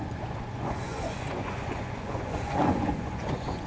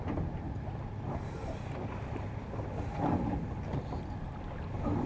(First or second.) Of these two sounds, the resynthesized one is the first